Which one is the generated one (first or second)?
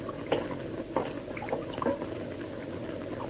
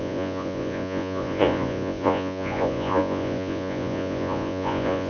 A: second